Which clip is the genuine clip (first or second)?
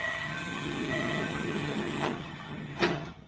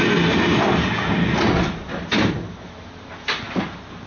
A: second